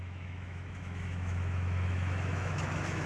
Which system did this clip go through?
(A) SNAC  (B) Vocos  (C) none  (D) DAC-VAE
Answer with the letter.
D